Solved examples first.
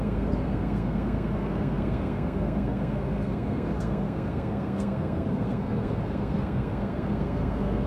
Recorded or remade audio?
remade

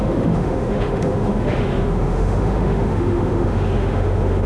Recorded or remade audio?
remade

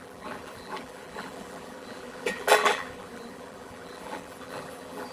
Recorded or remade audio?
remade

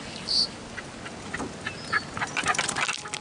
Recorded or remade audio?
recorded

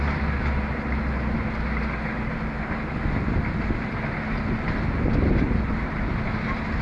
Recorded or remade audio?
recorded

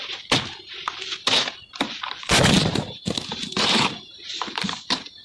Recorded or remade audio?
recorded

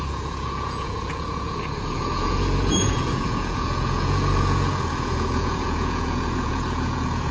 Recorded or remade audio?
remade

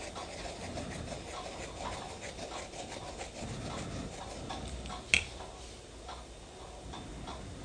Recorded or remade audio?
recorded